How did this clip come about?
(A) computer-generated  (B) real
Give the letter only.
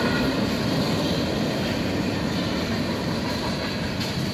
B